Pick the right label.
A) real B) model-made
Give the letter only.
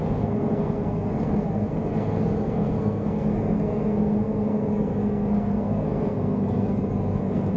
B